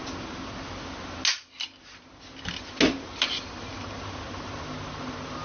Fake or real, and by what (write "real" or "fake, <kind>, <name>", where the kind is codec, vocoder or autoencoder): real